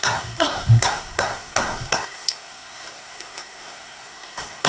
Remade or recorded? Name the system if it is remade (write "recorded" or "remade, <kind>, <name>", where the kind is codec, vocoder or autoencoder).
remade, codec, SNAC